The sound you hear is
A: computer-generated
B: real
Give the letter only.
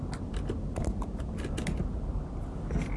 B